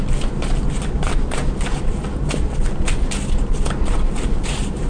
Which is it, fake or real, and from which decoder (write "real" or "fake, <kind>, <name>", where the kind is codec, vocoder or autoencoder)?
real